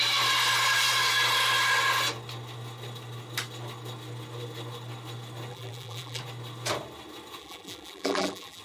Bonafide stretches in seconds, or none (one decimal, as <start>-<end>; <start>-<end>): 0.0-5.5; 6.2-7.4